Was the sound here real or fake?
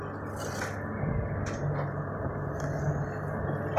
real